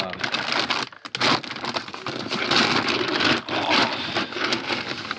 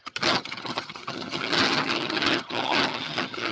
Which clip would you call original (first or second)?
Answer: first